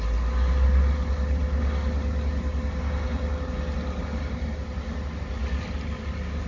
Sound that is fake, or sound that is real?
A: real